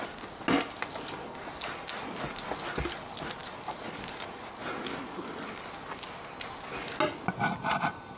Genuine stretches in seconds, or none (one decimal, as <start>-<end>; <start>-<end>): 0.0-8.2

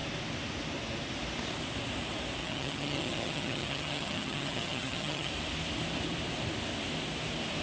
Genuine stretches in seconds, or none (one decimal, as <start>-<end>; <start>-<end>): 0.0-2.4; 5.3-7.6

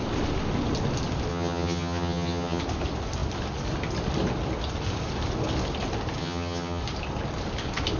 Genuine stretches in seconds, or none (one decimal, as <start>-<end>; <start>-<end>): 0.0-1.3; 2.6-6.2; 6.8-8.0

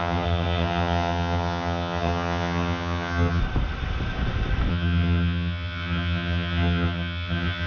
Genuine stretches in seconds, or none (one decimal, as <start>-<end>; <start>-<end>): 3.4-4.7

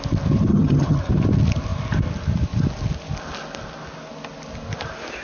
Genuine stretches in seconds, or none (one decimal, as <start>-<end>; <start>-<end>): 0.0-0.5; 1.1-5.2